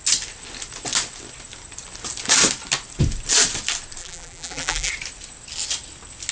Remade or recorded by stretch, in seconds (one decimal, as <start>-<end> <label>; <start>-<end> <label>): 0.0-4.0 recorded; 4.0-4.9 remade; 4.9-6.3 recorded